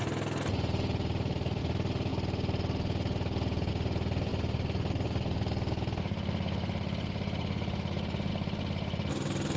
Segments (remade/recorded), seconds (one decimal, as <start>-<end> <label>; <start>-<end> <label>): 0.0-9.6 recorded